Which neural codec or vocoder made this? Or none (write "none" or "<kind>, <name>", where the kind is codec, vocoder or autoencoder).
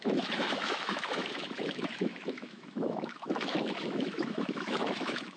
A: autoencoder, DAC-VAE